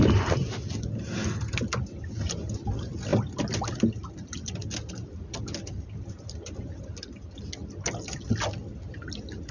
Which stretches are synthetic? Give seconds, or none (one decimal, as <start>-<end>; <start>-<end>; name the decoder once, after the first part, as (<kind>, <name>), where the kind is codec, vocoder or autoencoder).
none